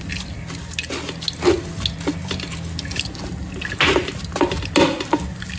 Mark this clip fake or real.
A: real